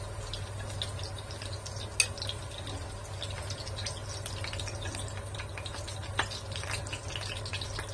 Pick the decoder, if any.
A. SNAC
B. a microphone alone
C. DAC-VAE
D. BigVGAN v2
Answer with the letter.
B